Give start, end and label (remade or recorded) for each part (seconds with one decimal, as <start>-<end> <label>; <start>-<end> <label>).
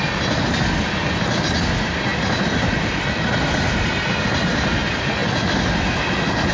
0.0-6.5 recorded